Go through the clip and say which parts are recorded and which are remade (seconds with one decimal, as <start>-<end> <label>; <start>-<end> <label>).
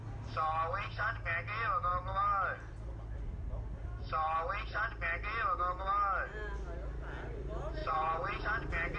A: 0.0-7.8 recorded; 7.8-8.4 remade; 8.4-9.0 recorded